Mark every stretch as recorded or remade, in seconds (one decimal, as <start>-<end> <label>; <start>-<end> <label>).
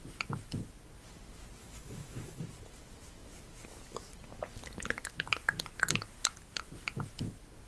0.0-1.6 recorded; 1.6-2.4 remade; 2.4-7.7 recorded